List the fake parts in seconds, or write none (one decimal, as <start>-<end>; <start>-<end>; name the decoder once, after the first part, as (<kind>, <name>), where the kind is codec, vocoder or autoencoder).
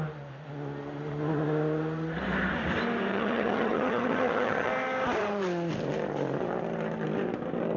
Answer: 3.1-4.7 (vocoder, HiFi-GAN)